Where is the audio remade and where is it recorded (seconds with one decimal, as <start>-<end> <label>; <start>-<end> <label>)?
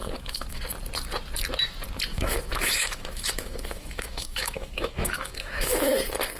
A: 0.0-0.6 remade; 0.6-2.1 recorded; 2.1-5.9 remade; 5.9-6.4 recorded